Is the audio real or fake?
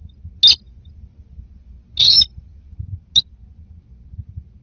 real